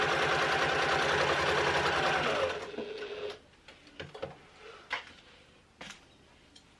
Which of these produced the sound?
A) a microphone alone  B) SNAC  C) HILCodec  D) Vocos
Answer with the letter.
A